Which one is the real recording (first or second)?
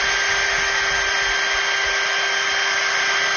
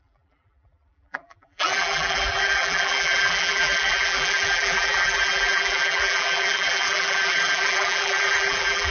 first